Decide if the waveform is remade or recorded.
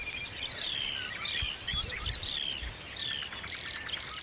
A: remade